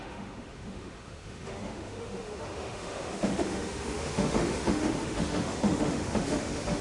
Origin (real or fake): fake